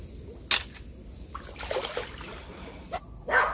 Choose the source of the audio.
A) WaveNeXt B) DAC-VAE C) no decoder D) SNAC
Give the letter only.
C